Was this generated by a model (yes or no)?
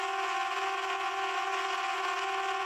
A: no